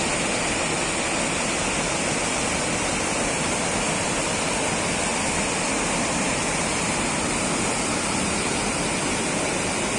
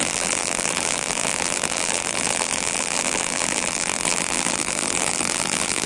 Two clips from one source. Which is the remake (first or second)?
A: second